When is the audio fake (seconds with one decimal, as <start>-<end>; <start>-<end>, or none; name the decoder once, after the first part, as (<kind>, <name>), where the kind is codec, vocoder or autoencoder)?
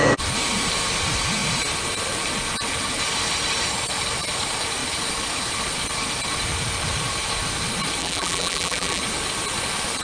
8.0-9.0 (vocoder, BigVGAN v2)